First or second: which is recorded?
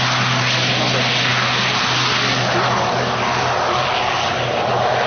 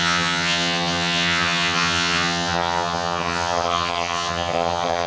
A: first